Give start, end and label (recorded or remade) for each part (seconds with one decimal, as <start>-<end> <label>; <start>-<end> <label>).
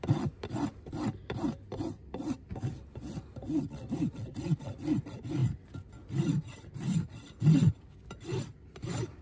0.0-9.2 recorded